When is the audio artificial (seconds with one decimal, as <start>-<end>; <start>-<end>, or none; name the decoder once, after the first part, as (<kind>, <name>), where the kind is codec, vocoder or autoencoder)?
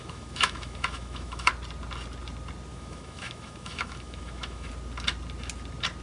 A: 0.0-1.5 (autoencoder, DAC-VAE); 2.7-4.7